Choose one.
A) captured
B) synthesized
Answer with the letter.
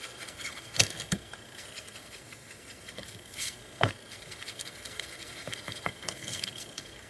B